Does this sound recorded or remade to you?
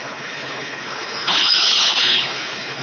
remade